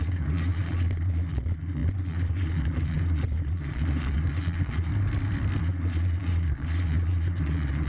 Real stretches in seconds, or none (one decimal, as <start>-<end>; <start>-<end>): 4.9-5.6